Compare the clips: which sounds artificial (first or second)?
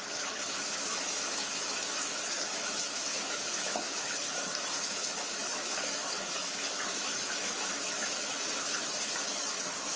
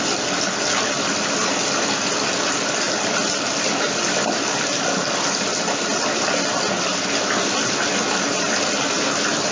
first